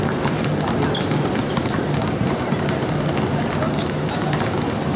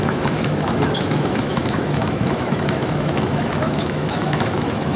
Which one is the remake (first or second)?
second